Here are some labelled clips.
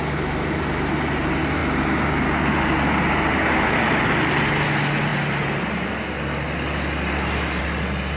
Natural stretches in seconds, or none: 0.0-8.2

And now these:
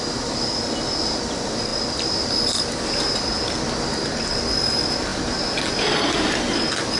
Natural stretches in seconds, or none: 0.0-7.0

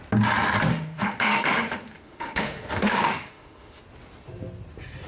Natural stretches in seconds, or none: 0.0-0.7; 3.8-5.1

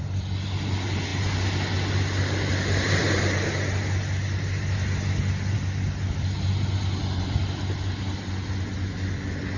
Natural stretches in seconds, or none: 0.0-9.6